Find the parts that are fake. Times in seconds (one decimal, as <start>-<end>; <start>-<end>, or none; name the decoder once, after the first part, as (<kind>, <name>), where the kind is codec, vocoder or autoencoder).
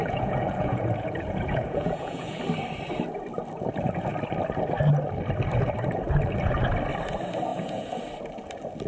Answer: 0.0-2.4 (vocoder, Vocos); 7.5-8.0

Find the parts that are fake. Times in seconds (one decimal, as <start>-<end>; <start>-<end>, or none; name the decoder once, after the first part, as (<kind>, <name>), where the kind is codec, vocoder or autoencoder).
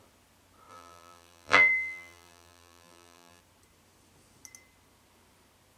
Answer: 0.7-3.4 (vocoder, BigVGAN v2)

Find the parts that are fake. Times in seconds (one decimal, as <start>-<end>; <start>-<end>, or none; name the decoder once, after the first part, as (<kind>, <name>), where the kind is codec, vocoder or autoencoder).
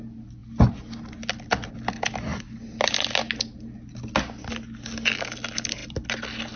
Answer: none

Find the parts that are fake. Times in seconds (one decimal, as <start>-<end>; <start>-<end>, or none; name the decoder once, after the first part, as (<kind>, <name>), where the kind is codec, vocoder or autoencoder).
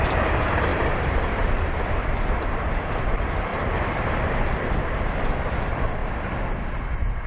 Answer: 0.0-6.0 (vocoder, BigVGAN v2)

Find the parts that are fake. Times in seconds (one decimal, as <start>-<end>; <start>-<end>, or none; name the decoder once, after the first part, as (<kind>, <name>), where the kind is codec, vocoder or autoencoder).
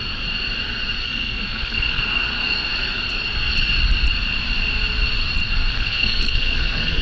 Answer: 1.0-2.0 (codec, SNAC); 5.7-7.0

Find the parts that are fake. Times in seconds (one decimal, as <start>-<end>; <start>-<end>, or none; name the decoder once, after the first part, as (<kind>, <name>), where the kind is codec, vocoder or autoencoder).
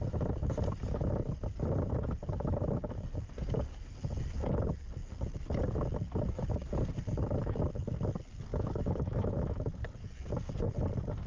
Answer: 8.5-9.7 (autoencoder, DAC-VAE)